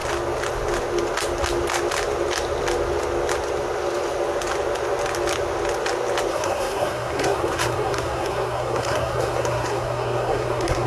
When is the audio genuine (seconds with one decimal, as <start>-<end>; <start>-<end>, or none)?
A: 0.0-6.3